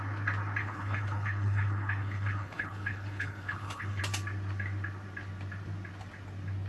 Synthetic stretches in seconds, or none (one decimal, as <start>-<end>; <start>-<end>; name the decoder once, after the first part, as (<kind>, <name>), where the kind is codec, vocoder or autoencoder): 0.6-4.0 (codec, HILCodec)